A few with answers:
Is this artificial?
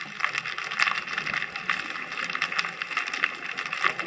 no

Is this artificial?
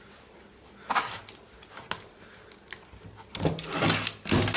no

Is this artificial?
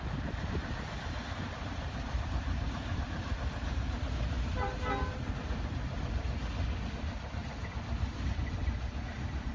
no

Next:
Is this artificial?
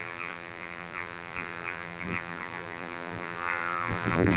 yes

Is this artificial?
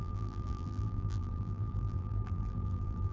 yes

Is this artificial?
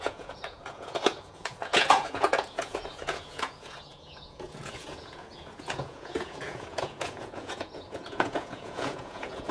yes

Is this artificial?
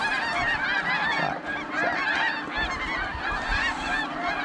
no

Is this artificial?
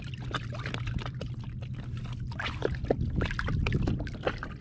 no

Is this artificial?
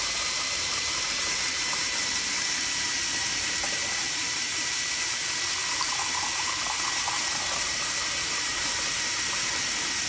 yes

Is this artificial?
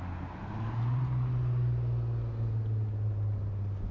no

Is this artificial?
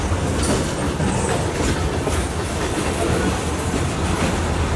no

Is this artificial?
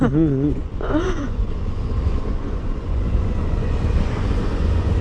yes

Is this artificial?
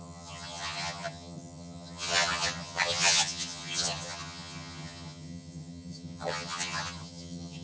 yes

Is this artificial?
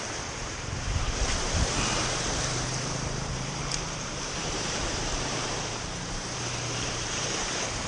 yes